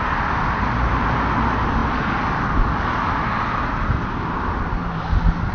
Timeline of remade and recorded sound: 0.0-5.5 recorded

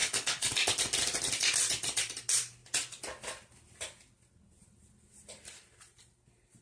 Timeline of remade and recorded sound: 0.0-0.5 remade; 0.5-6.6 recorded

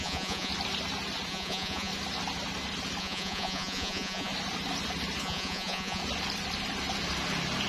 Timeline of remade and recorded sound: 0.0-0.5 remade; 0.5-1.3 recorded; 1.3-1.9 remade; 1.9-3.0 recorded; 3.0-4.3 remade; 4.3-5.2 recorded; 5.2-6.0 remade; 6.0-7.7 recorded

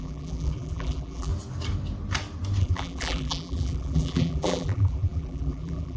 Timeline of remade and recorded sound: 0.0-1.3 remade; 1.3-2.6 recorded; 2.6-6.0 remade

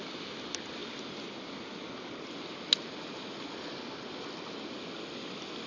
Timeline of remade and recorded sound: 0.0-5.7 recorded

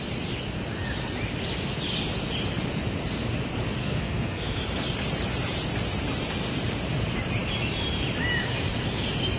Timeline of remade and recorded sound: 0.0-3.8 recorded; 3.8-4.6 remade; 4.6-9.4 recorded

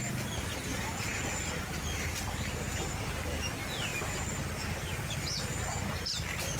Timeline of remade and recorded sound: 0.0-6.6 remade

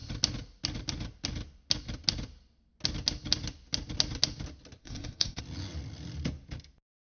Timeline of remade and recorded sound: 0.0-4.8 recorded; 4.8-5.4 remade; 5.4-7.0 recorded